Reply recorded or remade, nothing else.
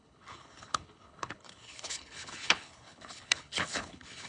remade